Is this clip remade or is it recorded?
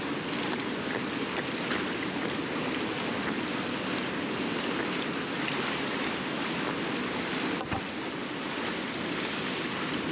recorded